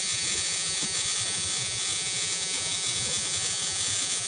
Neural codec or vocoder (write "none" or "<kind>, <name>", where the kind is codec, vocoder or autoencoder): vocoder, Vocos